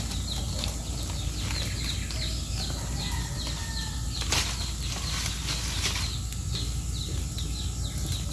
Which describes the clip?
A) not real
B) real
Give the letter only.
B